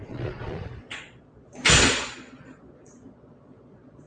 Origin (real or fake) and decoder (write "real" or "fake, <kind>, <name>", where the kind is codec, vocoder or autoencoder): fake, vocoder, Vocos